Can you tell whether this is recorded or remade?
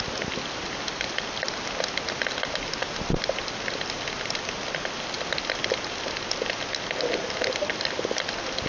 recorded